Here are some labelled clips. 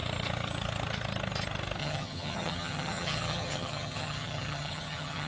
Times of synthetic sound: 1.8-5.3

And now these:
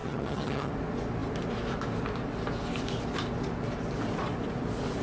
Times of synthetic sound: 0.0-0.7

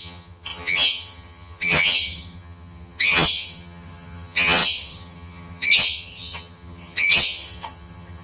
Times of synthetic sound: 0.0-8.2

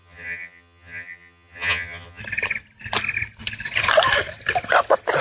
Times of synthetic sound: 0.0-2.2

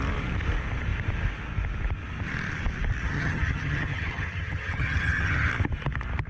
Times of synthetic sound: 3.0-5.5

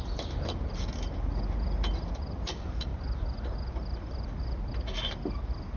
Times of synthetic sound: none

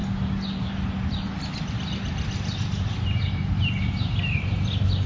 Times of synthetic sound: none

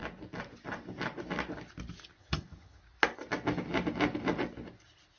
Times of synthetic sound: 2.2-2.8